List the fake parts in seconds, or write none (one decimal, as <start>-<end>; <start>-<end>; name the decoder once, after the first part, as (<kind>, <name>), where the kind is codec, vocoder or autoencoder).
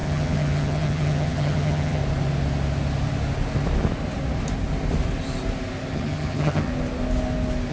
0.0-2.0 (vocoder, HiFi-GAN); 5.9-6.7